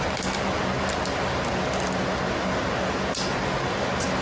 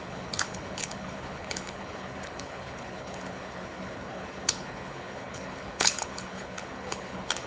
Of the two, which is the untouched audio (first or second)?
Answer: first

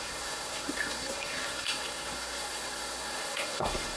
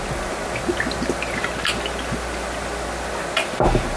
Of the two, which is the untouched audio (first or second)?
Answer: second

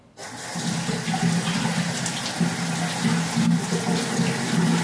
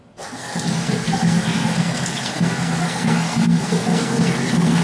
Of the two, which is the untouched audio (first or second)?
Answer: first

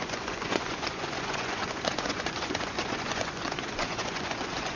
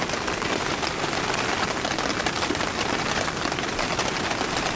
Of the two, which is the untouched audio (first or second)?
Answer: second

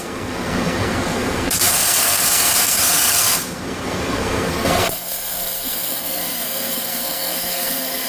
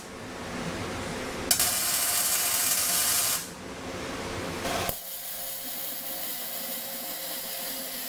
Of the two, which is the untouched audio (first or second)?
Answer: second